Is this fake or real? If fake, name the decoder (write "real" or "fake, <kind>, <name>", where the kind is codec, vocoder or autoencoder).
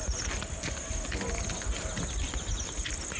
real